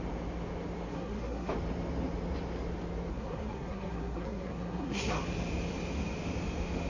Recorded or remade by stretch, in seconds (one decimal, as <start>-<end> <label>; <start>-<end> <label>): 0.0-0.9 recorded; 0.9-1.5 remade; 1.5-3.1 recorded; 3.1-5.2 remade; 5.2-6.9 recorded